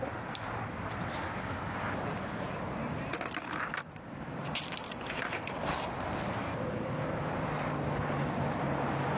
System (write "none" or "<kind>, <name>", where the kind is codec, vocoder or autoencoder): none